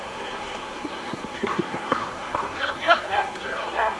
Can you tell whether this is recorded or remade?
remade